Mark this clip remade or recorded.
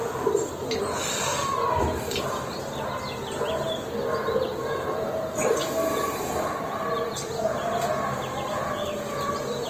recorded